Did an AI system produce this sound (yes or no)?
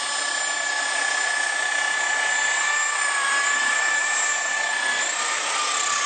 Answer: no